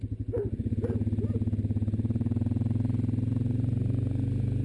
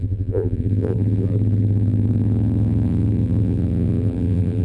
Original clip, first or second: first